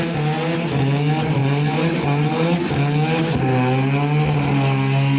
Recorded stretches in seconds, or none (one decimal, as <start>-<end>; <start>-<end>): 0.0-1.4; 2.7-5.2

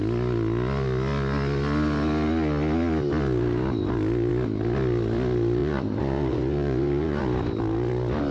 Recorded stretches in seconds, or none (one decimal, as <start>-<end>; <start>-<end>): 0.0-5.6; 7.2-8.3

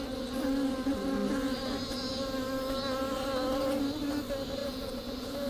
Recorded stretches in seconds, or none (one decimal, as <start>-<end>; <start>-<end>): 0.0-4.6

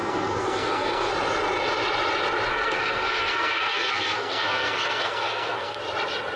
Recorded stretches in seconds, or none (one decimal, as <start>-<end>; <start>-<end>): 1.1-2.5; 5.8-6.4